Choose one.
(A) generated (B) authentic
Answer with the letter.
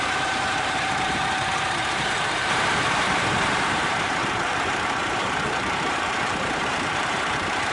A